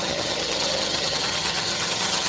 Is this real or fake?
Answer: fake